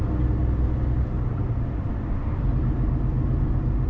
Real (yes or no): yes